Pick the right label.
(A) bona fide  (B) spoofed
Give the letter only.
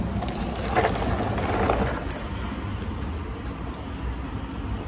A